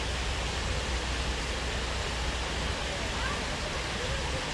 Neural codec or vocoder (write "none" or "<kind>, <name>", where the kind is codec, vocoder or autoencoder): none